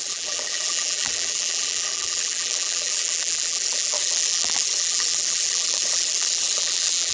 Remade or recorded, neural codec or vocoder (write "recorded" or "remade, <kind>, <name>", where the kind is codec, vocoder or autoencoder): remade, vocoder, BigVGAN v2